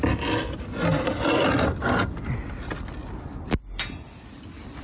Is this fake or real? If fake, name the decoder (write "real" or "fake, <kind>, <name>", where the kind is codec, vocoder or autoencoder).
real